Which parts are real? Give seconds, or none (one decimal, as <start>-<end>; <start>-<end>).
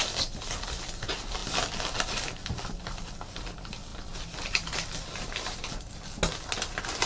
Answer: 0.0-7.1